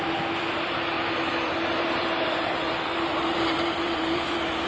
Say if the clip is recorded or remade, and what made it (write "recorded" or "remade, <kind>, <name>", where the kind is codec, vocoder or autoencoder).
remade, vocoder, BigVGAN v2